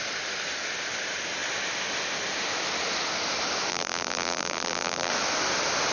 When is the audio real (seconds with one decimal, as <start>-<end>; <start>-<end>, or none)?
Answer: 0.0-3.7; 5.1-5.9